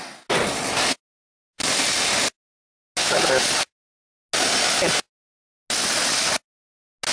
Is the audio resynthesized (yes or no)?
no